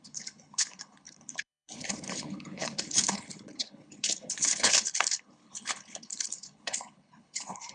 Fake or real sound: fake